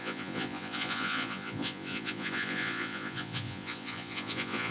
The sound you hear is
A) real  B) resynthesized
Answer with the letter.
B